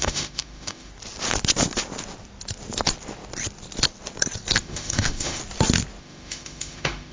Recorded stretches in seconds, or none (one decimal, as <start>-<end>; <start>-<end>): 0.9-4.6; 5.4-6.0